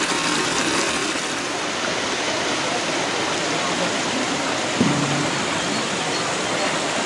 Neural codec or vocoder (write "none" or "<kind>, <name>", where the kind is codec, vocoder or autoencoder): none